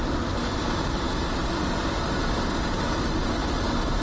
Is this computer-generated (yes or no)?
no